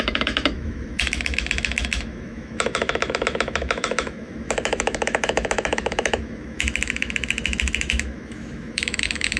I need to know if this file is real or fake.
fake